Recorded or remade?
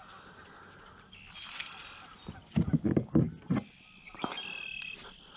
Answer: recorded